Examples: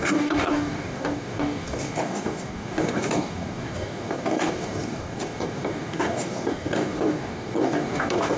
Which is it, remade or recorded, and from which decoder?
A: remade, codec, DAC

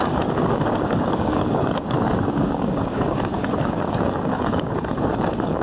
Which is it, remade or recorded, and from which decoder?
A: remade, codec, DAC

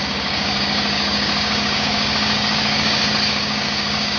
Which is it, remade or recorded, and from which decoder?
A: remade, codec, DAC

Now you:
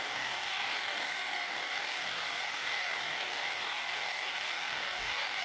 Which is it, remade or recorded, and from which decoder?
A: remade, codec, DAC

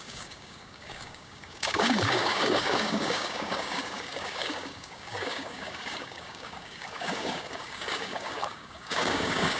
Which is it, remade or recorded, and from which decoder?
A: remade, codec, DAC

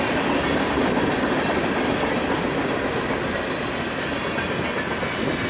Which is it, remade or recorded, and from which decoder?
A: recorded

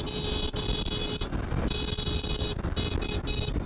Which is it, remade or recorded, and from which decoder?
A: recorded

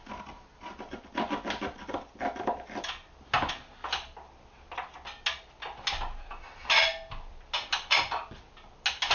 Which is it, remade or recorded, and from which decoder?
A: recorded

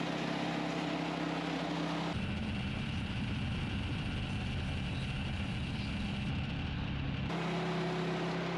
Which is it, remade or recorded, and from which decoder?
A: recorded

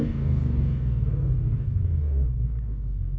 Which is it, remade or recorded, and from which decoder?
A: remade, codec, DAC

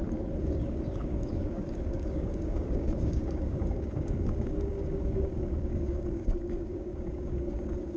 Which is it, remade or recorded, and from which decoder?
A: remade, codec, DAC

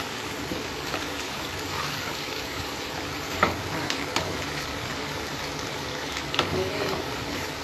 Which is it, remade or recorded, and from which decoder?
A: remade, codec, DAC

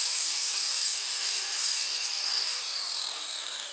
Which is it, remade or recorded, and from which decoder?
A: remade, codec, DAC